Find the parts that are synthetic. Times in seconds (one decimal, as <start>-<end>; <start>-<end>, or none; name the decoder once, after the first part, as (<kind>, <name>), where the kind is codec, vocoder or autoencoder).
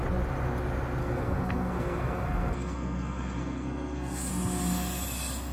1.0-4.3 (codec, SNAC)